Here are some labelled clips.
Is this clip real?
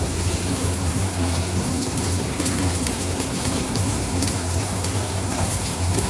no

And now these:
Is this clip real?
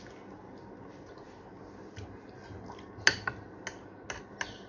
yes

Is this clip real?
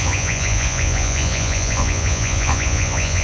no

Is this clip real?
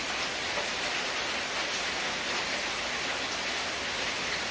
yes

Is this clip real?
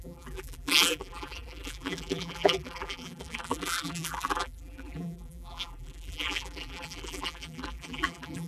no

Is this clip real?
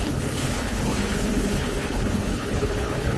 no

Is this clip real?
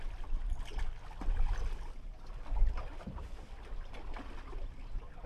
yes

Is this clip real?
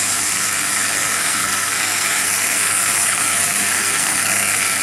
no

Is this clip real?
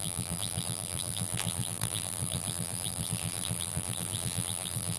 no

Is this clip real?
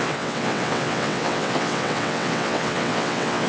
no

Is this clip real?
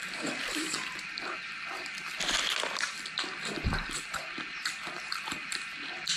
no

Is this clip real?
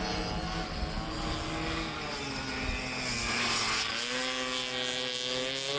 yes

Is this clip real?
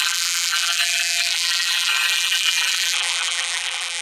no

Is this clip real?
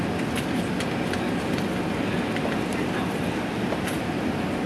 yes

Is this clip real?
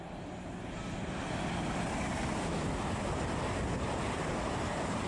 yes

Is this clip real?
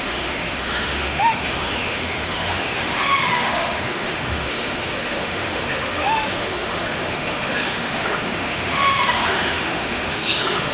no